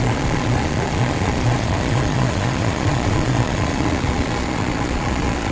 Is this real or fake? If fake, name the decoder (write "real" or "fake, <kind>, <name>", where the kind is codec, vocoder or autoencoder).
fake, vocoder, Vocos